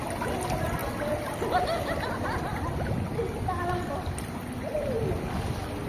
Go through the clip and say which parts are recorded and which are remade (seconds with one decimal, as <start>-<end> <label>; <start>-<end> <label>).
0.0-5.9 recorded